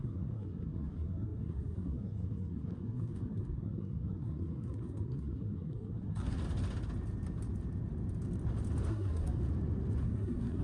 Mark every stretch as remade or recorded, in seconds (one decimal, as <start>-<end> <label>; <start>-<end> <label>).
0.0-6.4 remade; 6.4-8.9 recorded; 8.9-9.4 remade; 9.4-10.0 recorded; 10.0-10.6 remade